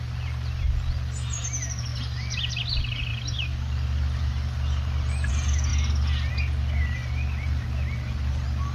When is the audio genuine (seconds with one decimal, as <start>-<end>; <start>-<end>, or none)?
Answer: 0.0-1.9; 2.6-3.1; 5.3-7.0; 7.6-8.7